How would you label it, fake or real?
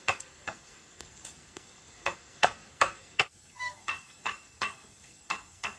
fake